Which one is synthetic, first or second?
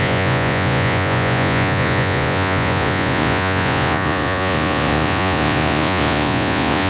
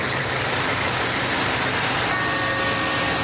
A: first